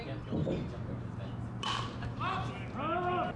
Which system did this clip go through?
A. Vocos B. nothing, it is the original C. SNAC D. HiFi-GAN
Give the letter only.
B